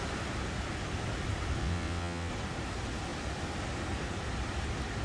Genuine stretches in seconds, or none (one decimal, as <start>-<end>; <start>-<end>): 0.0-1.6; 2.3-5.0